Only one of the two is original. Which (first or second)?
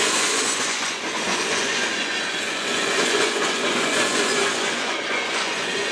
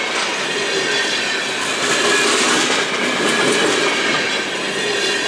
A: second